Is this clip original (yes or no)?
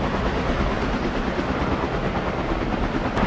yes